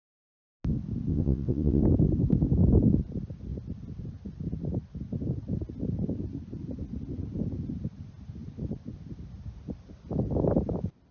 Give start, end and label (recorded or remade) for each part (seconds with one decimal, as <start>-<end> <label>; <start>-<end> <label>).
0.0-1.1 recorded; 1.1-1.8 remade; 1.8-11.1 recorded